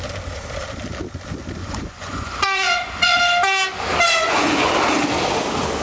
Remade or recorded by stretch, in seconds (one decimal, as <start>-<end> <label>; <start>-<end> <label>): 0.0-1.6 recorded; 1.6-3.2 remade; 3.2-4.2 recorded; 4.2-4.7 remade; 4.7-5.8 recorded